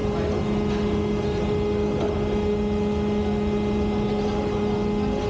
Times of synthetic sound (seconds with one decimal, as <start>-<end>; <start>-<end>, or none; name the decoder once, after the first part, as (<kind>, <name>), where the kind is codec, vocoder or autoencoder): none